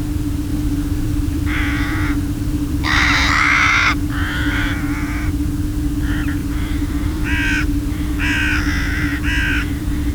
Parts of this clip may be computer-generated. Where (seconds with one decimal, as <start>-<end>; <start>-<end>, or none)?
0.5-3.4; 6.4-8.1; 9.1-10.1